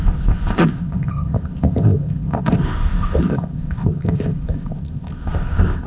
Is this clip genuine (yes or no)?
no